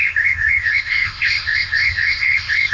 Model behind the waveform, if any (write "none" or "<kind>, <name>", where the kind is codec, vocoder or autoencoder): codec, ZipCodec